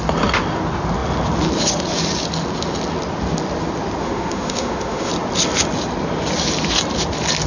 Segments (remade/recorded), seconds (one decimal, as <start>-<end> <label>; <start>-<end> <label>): 0.0-4.0 recorded; 4.0-5.1 remade; 5.1-7.5 recorded